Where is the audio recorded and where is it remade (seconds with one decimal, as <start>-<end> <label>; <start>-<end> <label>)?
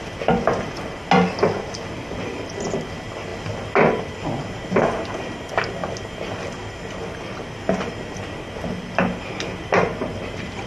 0.0-10.7 recorded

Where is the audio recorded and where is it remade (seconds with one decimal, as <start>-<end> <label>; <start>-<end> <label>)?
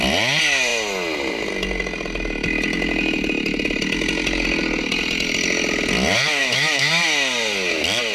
0.0-6.4 recorded; 6.4-6.9 remade; 6.9-8.1 recorded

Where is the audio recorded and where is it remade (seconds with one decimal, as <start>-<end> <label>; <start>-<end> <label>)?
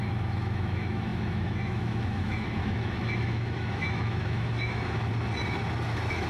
0.0-5.1 remade; 5.1-5.8 recorded; 5.8-6.3 remade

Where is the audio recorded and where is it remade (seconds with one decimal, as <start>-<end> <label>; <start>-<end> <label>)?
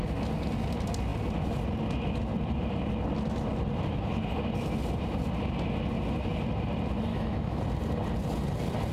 0.0-7.1 recorded; 7.1-7.6 remade; 7.6-8.9 recorded